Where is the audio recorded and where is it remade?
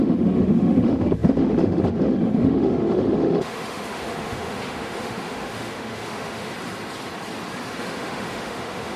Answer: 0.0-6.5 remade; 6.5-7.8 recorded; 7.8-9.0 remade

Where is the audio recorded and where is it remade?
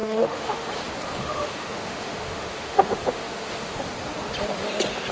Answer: 0.0-0.7 remade; 0.7-1.2 recorded; 1.2-3.8 remade; 3.8-5.1 recorded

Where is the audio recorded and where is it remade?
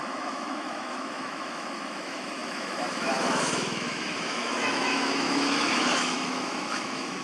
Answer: 0.0-7.2 remade